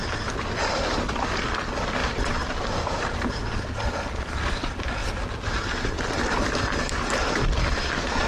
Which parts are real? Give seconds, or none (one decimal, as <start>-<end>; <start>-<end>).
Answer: 0.0-2.0; 3.7-8.3